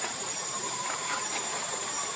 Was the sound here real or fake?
fake